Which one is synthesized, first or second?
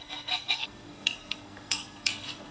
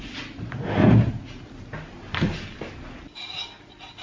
first